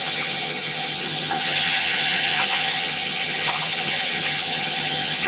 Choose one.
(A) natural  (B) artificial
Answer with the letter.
B